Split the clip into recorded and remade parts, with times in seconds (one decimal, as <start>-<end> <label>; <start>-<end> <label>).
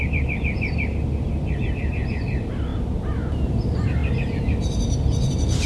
0.0-5.7 recorded